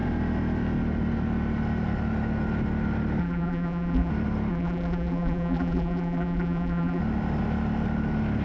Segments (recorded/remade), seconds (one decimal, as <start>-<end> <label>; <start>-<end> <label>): 0.0-3.2 recorded; 3.2-4.1 remade; 4.1-4.5 recorded; 4.5-7.0 remade; 7.0-8.4 recorded